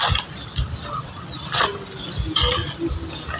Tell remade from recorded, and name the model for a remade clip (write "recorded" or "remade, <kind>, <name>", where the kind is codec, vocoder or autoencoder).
recorded